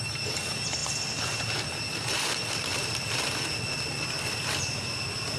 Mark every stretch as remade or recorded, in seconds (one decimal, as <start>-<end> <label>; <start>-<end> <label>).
0.0-5.4 recorded